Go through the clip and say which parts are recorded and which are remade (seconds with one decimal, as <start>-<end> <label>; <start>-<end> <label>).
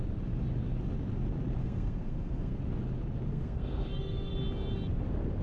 0.0-1.6 recorded; 1.6-2.6 remade; 2.6-3.3 recorded; 3.3-4.3 remade; 4.3-5.4 recorded